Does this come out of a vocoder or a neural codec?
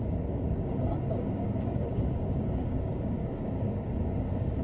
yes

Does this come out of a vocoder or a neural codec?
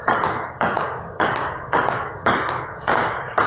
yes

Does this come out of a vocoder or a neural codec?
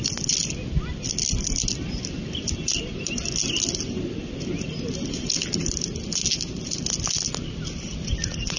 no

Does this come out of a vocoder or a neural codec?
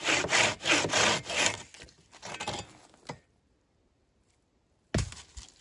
no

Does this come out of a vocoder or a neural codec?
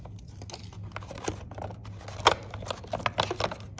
no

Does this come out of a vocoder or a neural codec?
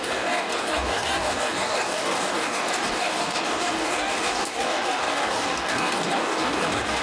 yes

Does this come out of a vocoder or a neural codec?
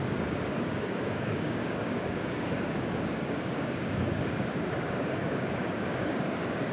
yes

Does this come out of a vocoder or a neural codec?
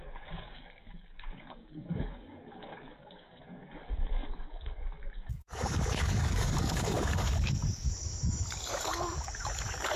yes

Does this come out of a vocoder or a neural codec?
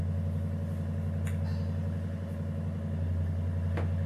no